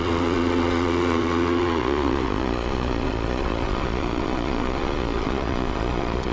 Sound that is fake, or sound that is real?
fake